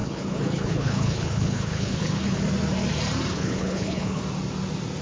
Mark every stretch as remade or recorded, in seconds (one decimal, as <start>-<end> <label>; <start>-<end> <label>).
0.0-2.4 remade; 2.4-3.3 recorded; 3.3-4.2 remade; 4.2-5.0 recorded